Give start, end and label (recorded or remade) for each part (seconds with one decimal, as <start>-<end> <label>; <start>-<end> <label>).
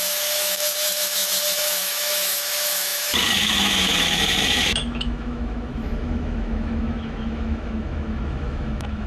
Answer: 0.0-9.1 remade